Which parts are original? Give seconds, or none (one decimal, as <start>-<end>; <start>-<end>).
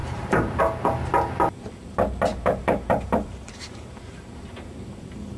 0.6-2.3; 4.4-5.4